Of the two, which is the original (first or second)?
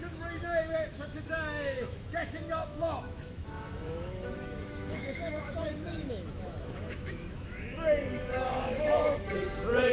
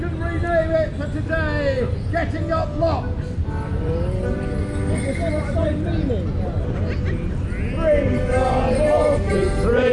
second